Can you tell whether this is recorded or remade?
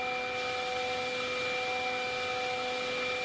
recorded